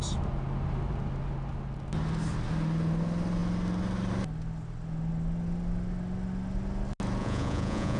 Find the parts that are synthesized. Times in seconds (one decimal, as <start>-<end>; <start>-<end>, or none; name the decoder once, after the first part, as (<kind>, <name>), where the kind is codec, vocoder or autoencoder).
7.2-8.0 (vocoder, Vocos)